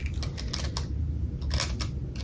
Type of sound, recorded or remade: recorded